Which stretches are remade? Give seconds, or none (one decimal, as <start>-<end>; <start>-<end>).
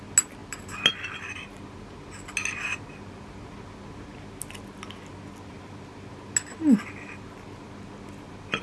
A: none